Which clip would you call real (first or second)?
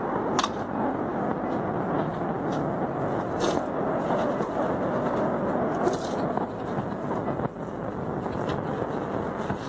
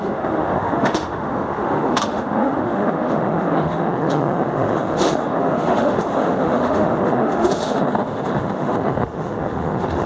first